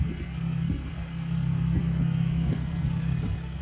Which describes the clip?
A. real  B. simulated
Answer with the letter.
B